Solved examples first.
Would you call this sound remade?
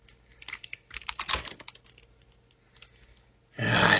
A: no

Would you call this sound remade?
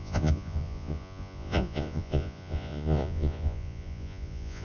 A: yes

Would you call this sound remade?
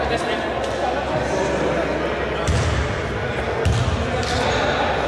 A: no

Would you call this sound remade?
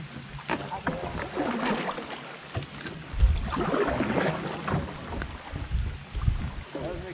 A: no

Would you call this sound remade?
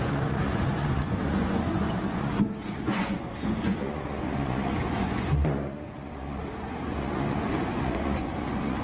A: yes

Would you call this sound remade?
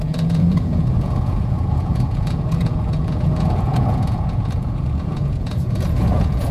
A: yes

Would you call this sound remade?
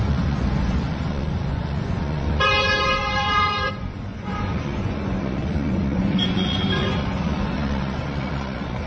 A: yes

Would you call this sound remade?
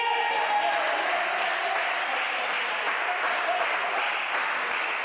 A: no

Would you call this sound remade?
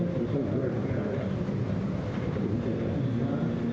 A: no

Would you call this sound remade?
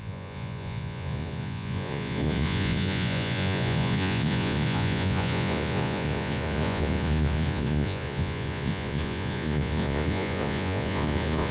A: yes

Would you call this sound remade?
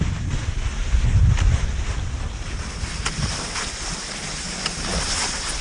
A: no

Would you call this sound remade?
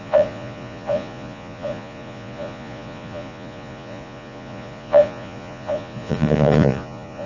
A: yes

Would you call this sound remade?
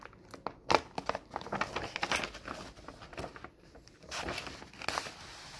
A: no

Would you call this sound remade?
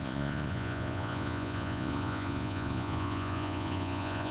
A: yes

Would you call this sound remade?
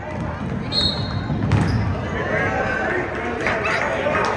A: no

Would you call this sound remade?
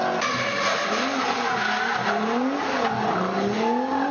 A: no